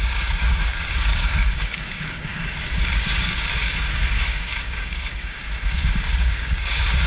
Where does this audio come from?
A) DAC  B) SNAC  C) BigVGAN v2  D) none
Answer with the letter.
A